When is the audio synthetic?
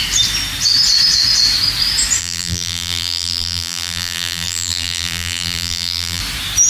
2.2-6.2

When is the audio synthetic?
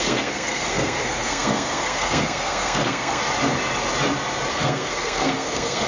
0.0-3.2; 4.5-5.9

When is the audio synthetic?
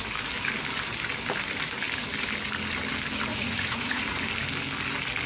3.3-4.0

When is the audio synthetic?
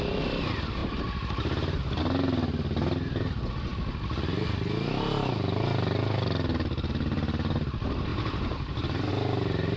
0.8-2.0; 8.1-9.1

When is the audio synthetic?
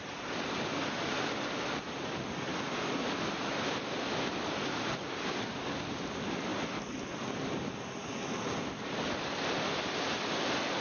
none